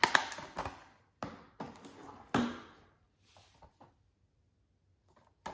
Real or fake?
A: real